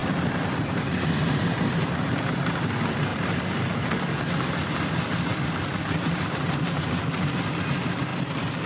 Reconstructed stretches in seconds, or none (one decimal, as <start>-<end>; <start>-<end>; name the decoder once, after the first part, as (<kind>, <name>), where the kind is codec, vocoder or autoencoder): 0.0-1.0 (vocoder, BigVGAN v2); 5.3-6.6